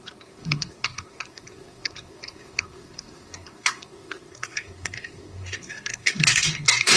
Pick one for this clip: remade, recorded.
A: remade